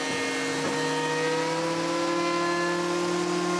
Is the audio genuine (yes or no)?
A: yes